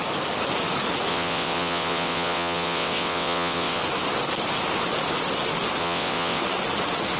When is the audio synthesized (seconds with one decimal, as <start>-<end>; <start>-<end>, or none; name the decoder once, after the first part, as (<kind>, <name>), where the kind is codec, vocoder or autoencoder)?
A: 1.1-3.8 (vocoder, WaveNeXt); 5.8-6.4